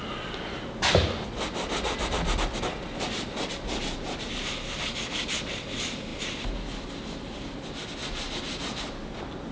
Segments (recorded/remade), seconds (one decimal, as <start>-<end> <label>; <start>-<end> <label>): 0.0-9.5 recorded